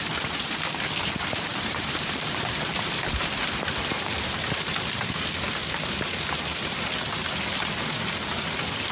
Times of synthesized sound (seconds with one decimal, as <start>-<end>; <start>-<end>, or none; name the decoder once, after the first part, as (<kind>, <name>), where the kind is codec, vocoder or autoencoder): 1.5-2.9 (vocoder, BigVGAN v2)